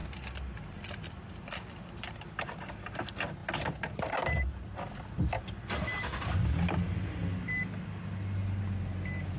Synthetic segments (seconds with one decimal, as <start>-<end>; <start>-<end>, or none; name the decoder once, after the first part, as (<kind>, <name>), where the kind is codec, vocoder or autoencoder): none